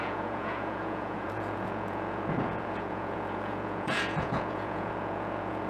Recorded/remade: remade